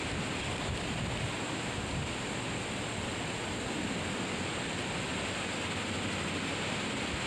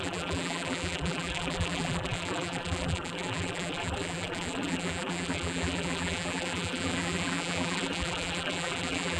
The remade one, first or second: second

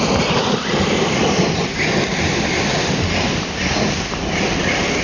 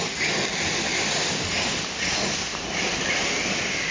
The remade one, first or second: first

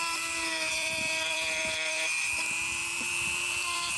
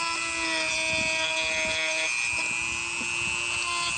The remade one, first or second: first